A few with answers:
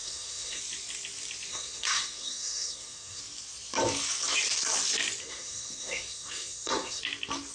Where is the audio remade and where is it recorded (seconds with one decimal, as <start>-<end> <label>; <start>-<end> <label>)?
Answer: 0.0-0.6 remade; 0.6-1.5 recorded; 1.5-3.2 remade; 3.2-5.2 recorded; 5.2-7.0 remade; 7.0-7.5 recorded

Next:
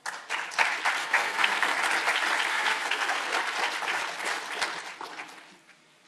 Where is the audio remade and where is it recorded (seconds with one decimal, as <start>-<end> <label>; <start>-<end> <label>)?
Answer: 0.0-1.0 recorded; 1.0-1.8 remade; 1.8-2.5 recorded; 2.5-3.4 remade; 3.4-6.1 recorded

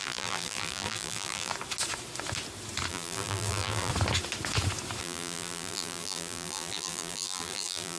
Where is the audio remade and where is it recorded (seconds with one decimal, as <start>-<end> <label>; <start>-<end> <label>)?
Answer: 0.0-1.5 remade; 1.5-2.9 recorded; 2.9-3.9 remade; 3.9-5.0 recorded; 5.0-8.0 remade

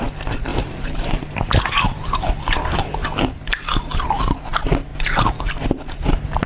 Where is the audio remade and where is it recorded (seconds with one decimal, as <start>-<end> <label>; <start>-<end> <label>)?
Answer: 0.0-0.5 recorded; 0.5-2.1 remade; 2.1-6.5 recorded